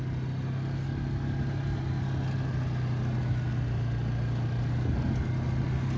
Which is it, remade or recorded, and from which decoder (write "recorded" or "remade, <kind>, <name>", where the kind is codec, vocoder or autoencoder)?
recorded